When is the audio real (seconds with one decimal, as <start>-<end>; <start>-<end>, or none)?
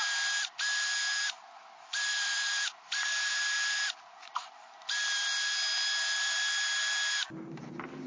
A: 0.0-2.1; 3.3-8.1